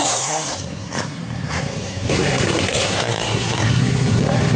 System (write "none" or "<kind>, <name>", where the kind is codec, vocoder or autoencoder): codec, SNAC